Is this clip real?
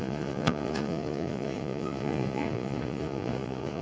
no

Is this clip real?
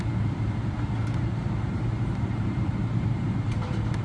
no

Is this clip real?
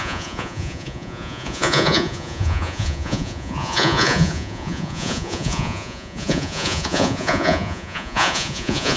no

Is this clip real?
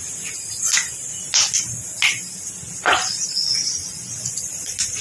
yes